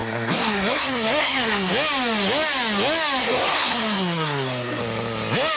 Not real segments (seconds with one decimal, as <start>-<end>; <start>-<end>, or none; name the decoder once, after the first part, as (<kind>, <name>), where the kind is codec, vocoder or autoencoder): 0.0-1.7 (codec, SNAC); 3.2-4.8